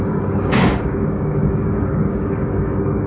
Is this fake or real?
fake